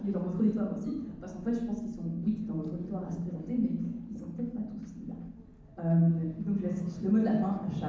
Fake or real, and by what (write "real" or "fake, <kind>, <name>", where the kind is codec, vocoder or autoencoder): real